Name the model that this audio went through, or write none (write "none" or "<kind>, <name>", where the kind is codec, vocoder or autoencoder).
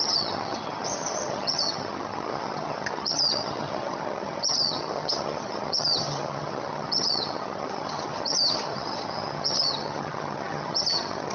vocoder, HiFi-GAN